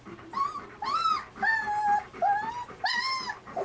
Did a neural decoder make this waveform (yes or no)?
no